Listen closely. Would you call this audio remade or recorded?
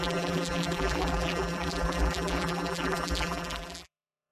remade